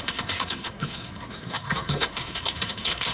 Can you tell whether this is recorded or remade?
remade